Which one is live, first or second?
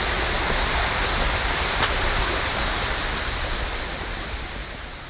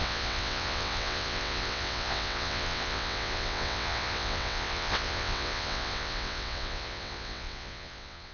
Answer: first